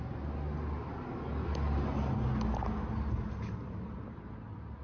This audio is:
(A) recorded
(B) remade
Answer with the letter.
A